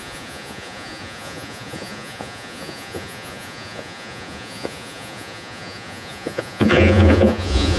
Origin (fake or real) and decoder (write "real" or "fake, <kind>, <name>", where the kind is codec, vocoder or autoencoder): fake, vocoder, Vocos